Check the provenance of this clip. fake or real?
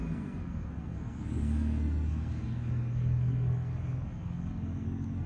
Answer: fake